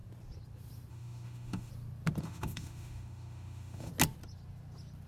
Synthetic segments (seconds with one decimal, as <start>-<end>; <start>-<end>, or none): 0.9-1.7; 2.2-3.9